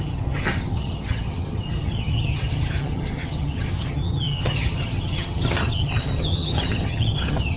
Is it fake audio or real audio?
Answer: fake